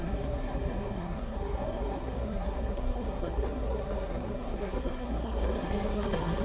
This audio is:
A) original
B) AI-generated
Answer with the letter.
B